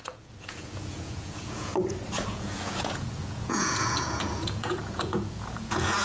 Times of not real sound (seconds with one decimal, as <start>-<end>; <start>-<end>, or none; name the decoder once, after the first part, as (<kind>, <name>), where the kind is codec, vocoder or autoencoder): 0.0-1.7 (vocoder, Vocos); 2.3-6.0